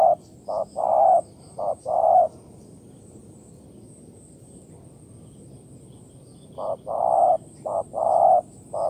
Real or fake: real